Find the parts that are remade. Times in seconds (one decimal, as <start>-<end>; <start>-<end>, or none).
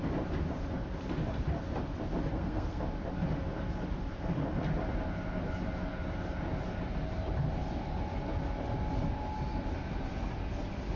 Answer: 2.3-2.8